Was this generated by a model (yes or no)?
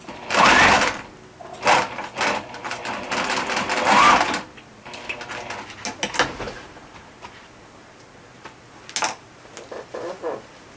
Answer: no